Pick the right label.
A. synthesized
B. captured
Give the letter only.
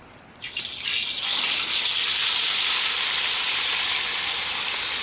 B